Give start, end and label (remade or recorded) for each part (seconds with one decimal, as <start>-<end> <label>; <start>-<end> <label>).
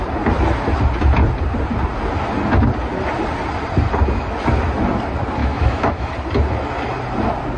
0.0-5.4 recorded; 5.4-6.1 remade; 6.1-7.6 recorded